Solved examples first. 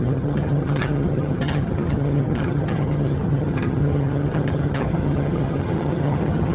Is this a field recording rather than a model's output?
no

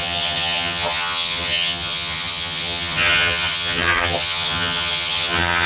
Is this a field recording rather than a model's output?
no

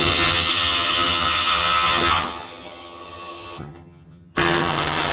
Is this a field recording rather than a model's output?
no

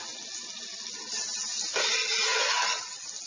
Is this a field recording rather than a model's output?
yes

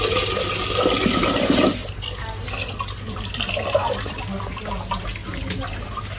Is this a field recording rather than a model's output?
yes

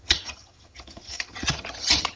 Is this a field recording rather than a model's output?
no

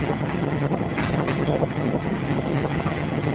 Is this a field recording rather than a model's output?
no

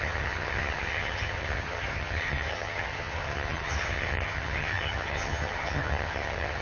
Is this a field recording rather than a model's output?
no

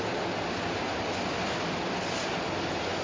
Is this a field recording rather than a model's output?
yes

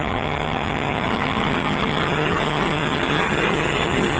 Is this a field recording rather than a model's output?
no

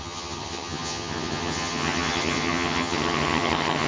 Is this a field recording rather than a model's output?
no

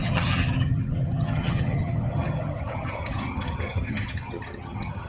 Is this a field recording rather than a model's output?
no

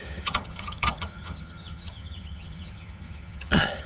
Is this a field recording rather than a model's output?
no